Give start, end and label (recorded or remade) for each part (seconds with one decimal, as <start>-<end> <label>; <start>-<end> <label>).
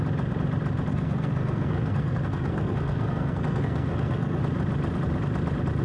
0.0-0.9 recorded; 0.9-4.4 remade; 4.4-5.8 recorded